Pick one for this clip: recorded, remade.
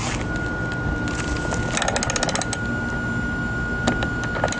recorded